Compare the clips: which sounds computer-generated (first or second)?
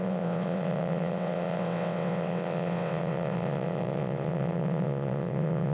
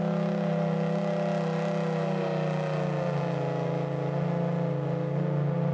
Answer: first